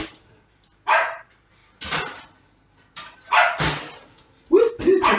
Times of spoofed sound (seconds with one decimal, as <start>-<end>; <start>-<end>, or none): 0.0-1.6; 4.7-5.2